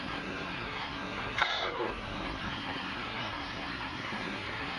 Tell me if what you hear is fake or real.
fake